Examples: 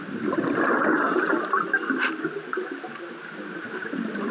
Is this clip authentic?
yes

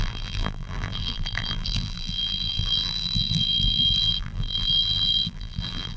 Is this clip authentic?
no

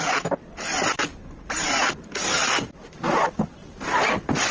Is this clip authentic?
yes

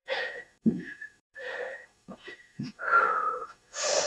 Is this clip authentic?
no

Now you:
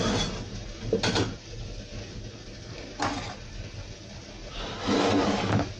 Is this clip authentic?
yes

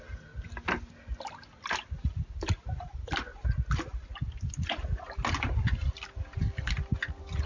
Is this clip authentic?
yes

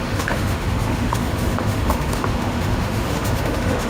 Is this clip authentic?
no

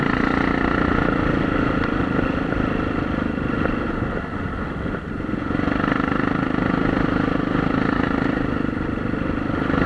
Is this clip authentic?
yes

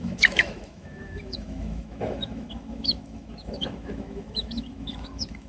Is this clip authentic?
no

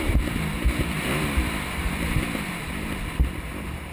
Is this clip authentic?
yes